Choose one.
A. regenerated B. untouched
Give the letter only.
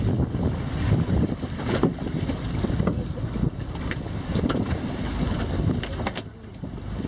A